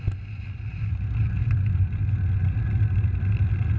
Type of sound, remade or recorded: recorded